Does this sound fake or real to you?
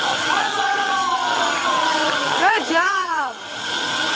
fake